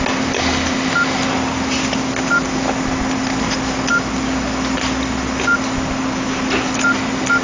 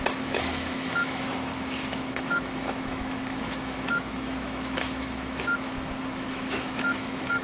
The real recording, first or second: first